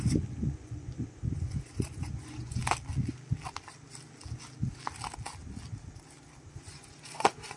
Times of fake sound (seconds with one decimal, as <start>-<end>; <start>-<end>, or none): 0.0-2.6; 6.5-7.6